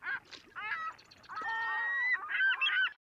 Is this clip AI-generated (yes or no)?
no